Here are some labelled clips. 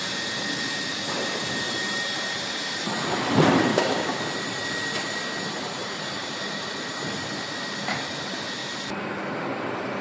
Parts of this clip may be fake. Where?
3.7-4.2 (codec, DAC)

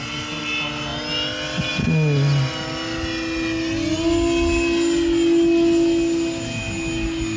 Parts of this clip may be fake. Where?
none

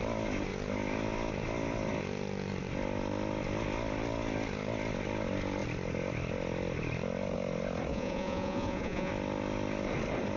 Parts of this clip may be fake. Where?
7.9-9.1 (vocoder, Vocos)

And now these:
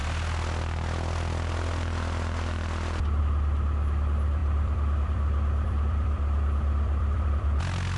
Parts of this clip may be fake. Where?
4.4-7.6 (vocoder, BigVGAN v2)

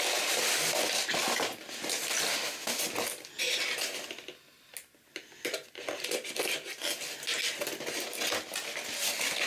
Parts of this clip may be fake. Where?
2.3-2.8 (autoencoder, DAC-VAE)